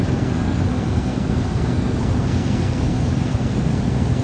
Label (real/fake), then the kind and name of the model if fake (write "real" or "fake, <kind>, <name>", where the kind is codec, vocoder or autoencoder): fake, codec, SNAC